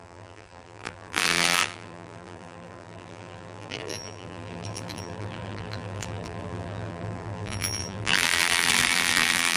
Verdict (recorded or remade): remade